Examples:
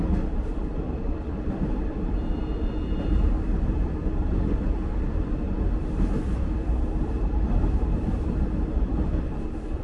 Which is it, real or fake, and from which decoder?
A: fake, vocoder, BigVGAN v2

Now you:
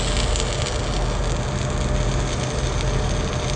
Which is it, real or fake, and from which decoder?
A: real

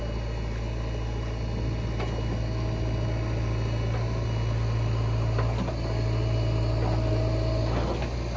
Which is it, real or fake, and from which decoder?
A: real